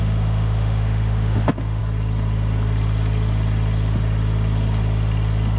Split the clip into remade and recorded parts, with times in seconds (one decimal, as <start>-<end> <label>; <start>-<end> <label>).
0.0-1.8 remade; 1.8-5.6 recorded